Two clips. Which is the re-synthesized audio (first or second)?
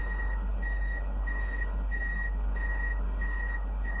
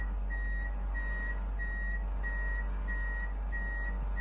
first